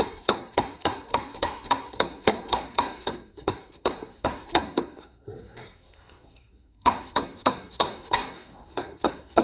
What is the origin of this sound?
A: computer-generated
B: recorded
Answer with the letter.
A